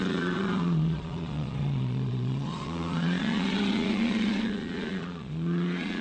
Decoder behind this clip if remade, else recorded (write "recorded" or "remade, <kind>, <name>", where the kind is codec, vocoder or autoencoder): remade, vocoder, Vocos